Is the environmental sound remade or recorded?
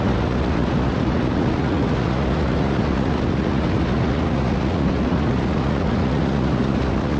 remade